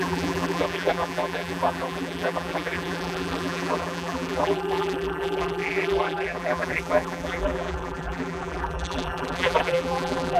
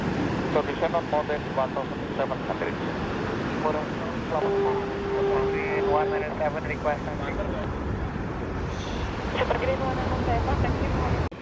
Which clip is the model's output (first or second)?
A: first